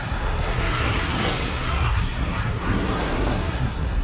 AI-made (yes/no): yes